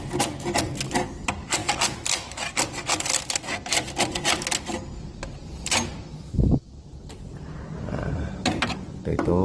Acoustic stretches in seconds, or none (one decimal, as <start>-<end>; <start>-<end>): 0.0-9.4